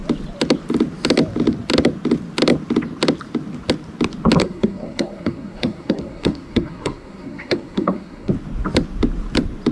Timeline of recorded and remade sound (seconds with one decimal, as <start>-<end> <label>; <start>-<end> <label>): 0.0-4.4 recorded; 4.4-8.3 remade; 8.3-9.7 recorded